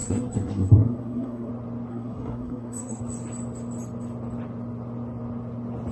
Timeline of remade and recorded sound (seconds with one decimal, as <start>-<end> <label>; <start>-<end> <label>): 0.0-1.5 remade; 1.5-1.9 recorded; 1.9-3.0 remade; 3.0-5.9 recorded